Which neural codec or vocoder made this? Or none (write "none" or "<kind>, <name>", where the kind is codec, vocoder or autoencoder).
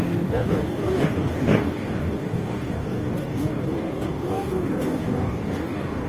codec, DAC